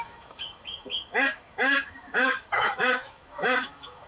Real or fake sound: fake